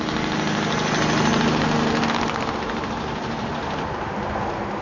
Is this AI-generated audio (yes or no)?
no